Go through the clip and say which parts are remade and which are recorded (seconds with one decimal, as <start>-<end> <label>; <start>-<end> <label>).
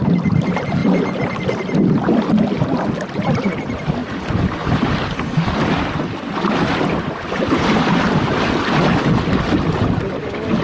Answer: 0.0-4.0 recorded; 4.0-9.0 remade; 9.0-10.6 recorded